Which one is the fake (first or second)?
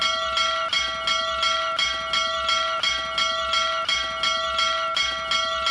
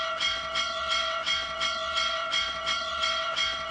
second